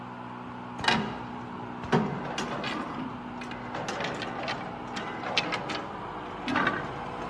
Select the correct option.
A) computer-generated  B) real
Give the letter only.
B